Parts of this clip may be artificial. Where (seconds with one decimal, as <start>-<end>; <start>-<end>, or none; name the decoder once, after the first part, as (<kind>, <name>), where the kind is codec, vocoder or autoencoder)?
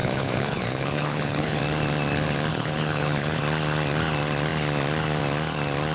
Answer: 0.0-1.6 (codec, HILCodec); 2.5-3.4